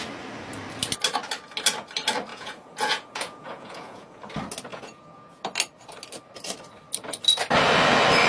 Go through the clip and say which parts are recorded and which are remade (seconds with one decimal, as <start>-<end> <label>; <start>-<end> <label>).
0.0-2.3 recorded; 2.3-4.2 remade; 4.2-4.7 recorded; 4.7-5.4 remade; 5.4-8.3 recorded